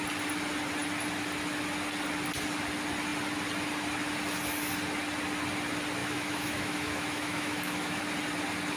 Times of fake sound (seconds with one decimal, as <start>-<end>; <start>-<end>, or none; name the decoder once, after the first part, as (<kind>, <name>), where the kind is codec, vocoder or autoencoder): 6.0-8.0 (autoencoder, DAC-VAE)